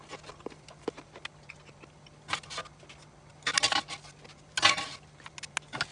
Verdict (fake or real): real